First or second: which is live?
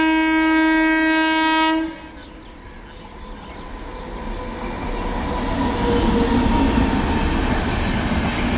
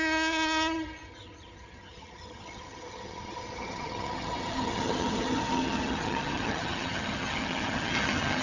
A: first